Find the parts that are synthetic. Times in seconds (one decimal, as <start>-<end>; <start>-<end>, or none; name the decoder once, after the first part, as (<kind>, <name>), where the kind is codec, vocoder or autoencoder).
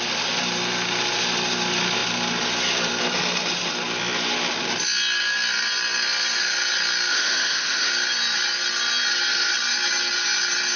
7.1-7.9 (autoencoder, DAC-VAE)